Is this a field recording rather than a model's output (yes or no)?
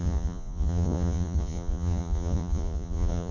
no